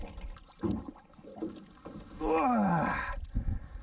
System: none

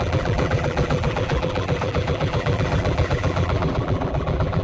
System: vocoder, BigVGAN v2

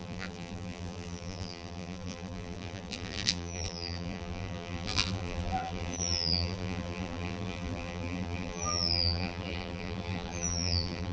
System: vocoder, BigVGAN v2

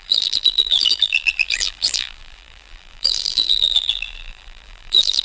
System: vocoder, BigVGAN v2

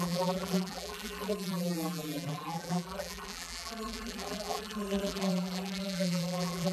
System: vocoder, BigVGAN v2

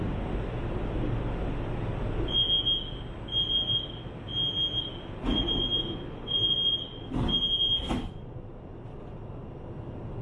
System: none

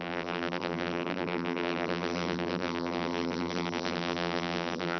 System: vocoder, BigVGAN v2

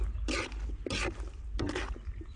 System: none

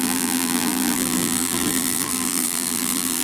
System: vocoder, BigVGAN v2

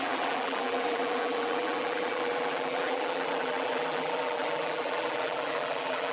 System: vocoder, BigVGAN v2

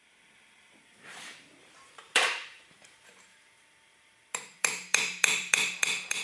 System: vocoder, BigVGAN v2